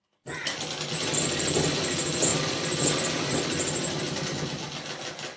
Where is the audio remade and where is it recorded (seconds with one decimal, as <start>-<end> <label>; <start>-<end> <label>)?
0.0-5.4 recorded